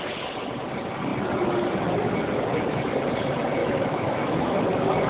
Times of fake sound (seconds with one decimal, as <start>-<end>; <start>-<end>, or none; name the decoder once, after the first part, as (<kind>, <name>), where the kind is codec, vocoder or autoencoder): 3.6-4.6 (autoencoder, DAC-VAE)

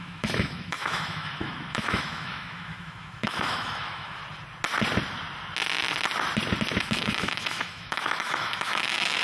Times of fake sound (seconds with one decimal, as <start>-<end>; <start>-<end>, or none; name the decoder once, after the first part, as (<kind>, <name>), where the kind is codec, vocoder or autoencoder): 0.0-4.2 (autoencoder, DAC-VAE); 6.8-9.2

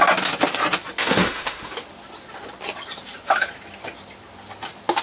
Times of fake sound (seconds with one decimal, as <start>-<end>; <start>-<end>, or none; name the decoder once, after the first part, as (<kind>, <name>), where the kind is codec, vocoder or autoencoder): 1.0-1.7 (autoencoder, DAC-VAE)

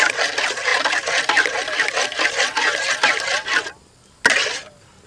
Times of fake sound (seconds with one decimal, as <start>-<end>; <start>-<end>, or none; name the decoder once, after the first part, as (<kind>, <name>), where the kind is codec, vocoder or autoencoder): none

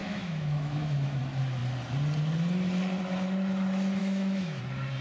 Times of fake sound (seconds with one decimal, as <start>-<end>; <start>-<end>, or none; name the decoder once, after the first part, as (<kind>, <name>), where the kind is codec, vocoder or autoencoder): 0.0-1.2 (autoencoder, DAC-VAE); 4.0-4.6

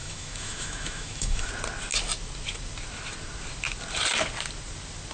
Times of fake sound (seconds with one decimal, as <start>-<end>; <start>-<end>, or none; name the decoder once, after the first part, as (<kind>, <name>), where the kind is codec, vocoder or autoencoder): 0.0-1.5 (autoencoder, DAC-VAE)

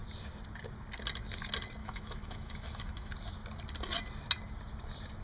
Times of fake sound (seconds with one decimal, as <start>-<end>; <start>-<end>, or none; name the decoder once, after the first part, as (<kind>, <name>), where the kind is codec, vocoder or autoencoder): 1.8-3.1 (autoencoder, DAC-VAE)